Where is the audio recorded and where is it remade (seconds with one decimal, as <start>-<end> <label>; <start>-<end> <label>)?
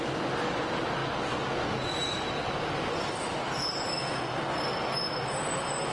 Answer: 0.0-5.9 recorded